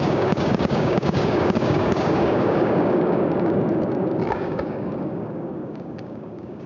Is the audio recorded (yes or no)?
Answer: no